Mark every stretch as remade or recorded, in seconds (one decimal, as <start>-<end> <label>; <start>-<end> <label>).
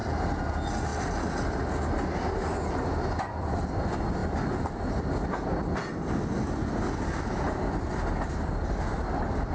0.0-9.5 recorded